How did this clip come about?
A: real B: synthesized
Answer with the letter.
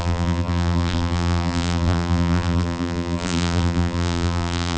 B